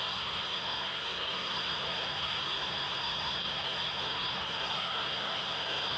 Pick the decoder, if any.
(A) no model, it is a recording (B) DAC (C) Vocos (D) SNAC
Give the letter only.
D